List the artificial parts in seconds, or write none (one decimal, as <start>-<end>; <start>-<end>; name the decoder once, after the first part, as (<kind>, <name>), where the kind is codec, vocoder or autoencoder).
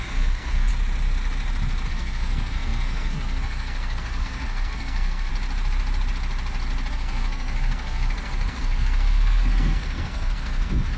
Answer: 0.0-0.7 (codec, SNAC); 1.9-5.3; 6.9-11.0